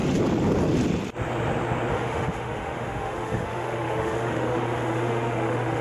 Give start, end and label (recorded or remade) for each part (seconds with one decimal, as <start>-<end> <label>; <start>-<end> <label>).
0.0-1.9 recorded; 1.9-5.8 remade